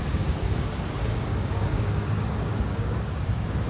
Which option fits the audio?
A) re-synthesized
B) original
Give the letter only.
A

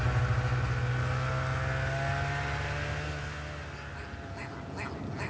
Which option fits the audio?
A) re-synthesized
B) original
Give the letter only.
B